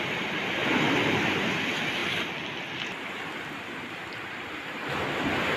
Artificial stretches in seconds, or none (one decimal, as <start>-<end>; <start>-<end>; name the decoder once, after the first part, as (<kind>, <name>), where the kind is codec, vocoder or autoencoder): none